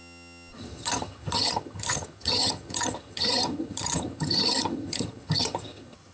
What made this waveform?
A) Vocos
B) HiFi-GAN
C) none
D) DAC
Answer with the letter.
B